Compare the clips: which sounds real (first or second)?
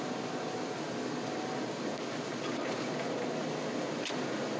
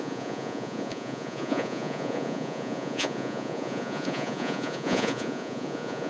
first